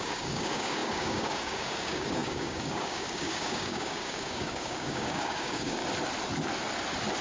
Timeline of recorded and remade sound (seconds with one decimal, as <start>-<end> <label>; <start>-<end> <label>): 0.0-5.8 remade; 5.8-7.2 recorded